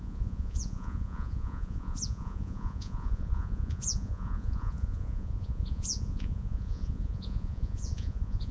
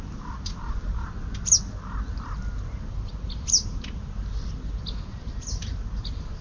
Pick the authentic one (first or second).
second